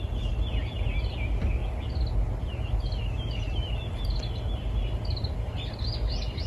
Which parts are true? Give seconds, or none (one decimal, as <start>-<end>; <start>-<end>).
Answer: 0.0-6.5